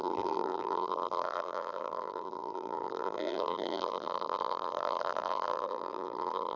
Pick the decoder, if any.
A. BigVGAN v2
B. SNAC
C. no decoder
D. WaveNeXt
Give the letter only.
A